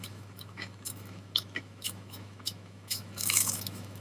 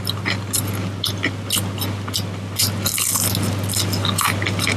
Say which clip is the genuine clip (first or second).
second